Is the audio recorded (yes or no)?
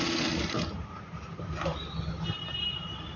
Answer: yes